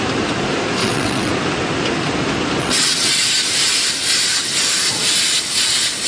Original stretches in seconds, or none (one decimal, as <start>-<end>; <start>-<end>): 0.0-0.8; 1.3-2.6; 3.2-6.1